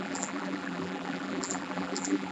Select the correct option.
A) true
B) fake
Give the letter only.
B